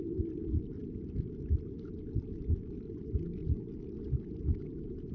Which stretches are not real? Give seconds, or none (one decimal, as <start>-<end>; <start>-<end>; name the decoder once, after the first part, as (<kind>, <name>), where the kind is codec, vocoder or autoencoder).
none